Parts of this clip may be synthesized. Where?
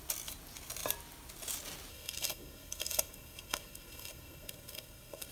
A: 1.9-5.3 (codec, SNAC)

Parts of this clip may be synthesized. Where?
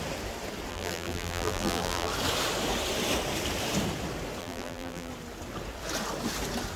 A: 0.7-2.1 (vocoder, BigVGAN v2); 4.4-5.1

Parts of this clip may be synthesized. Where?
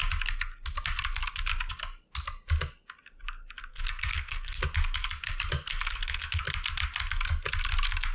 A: 3.7-4.6 (codec, SNAC); 5.7-6.4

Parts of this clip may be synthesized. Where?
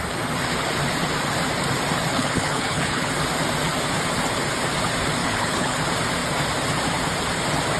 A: 2.1-3.1 (codec, HILCodec); 5.2-5.8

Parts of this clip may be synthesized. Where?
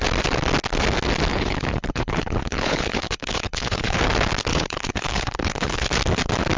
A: 1.3-4.0 (codec, HILCodec); 4.5-5.9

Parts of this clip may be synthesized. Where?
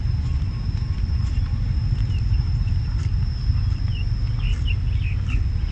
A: 0.0-3.4 (vocoder, BigVGAN v2)